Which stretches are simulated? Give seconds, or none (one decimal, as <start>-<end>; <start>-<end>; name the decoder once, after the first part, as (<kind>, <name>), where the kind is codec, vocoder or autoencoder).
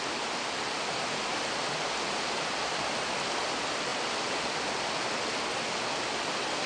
none